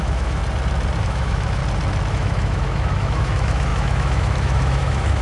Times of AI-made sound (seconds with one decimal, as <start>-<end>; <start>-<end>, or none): 0.0-0.4; 1.0-1.6; 2.1-5.2